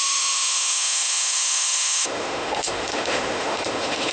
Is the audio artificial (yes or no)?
yes